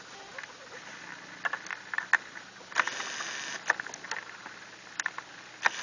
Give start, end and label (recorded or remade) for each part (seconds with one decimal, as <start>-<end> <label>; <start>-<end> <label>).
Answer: 0.0-5.8 recorded